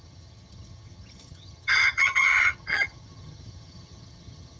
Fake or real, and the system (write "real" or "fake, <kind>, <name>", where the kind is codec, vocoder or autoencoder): fake, vocoder, HiFi-GAN